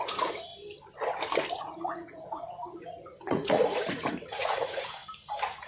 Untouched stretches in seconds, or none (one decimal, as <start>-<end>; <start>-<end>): 0.5-1.5; 5.0-5.7